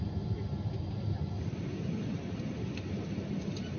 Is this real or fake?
real